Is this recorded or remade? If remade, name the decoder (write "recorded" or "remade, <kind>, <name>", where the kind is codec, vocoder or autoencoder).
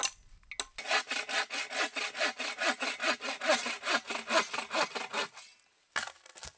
recorded